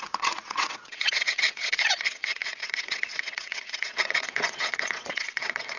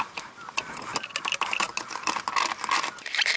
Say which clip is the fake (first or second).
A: first